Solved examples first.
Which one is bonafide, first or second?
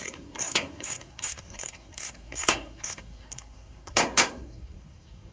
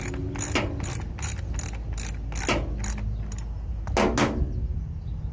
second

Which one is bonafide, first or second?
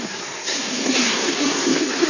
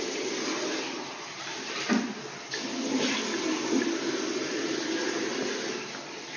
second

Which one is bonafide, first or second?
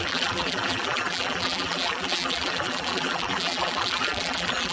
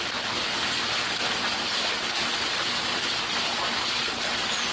second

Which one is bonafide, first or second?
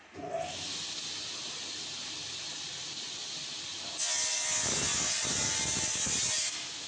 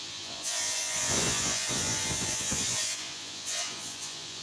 first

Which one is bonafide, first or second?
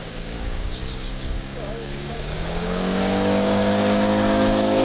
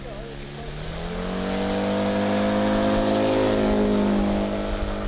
second